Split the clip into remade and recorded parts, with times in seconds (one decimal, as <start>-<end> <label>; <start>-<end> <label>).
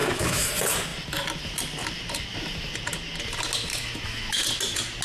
0.0-0.5 remade; 0.5-3.7 recorded; 3.7-4.4 remade; 4.4-5.0 recorded